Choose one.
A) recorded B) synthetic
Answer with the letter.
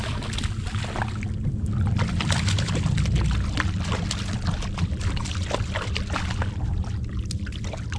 A